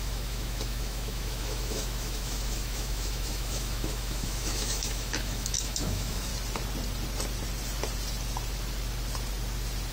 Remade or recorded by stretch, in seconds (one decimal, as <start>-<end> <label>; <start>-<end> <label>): 0.0-6.3 remade; 6.3-9.9 recorded